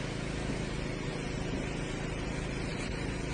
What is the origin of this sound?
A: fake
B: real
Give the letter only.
B